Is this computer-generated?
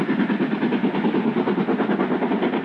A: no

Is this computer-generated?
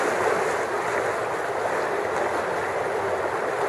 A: no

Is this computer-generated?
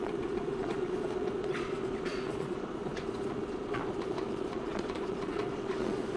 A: yes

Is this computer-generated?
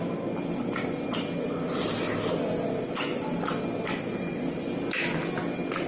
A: no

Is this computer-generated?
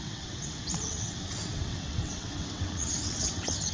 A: yes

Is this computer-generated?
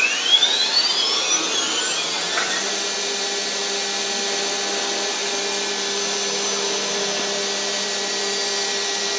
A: no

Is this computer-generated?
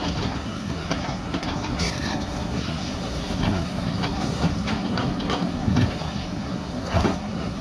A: yes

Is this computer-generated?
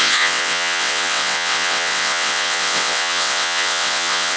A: yes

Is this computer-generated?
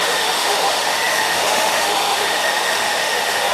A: yes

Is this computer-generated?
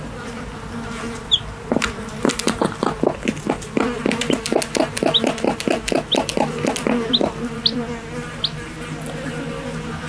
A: no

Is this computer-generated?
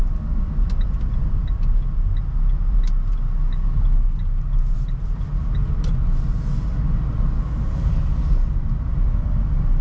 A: no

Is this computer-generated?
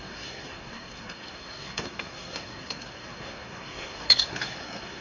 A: yes